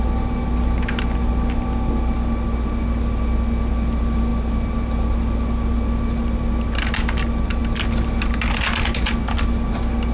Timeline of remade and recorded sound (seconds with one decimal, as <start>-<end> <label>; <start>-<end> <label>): 0.0-10.1 recorded